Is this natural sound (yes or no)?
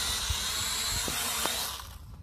yes